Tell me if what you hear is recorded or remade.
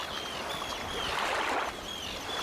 recorded